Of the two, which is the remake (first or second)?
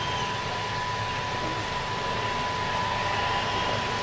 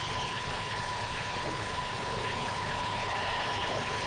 second